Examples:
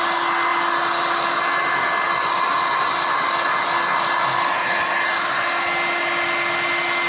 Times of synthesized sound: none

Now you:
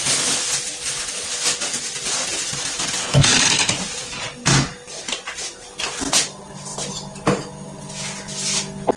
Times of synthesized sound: 3.0-3.7 (codec, HILCodec)

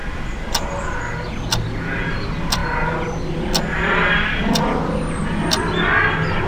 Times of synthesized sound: none

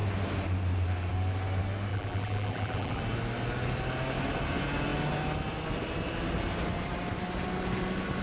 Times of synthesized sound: 1.9-3.0 (vocoder, BigVGAN v2)

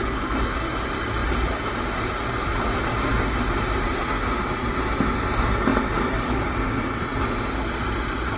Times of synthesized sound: 1.2-2.3 (vocoder, BigVGAN v2)

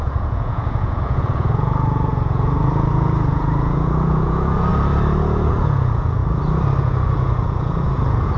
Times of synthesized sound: 0.0-4.7 (vocoder, Vocos); 5.5-6.2; 6.8-8.4